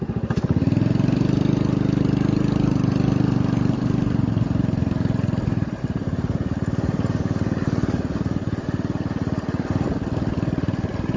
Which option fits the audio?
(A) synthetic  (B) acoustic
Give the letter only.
B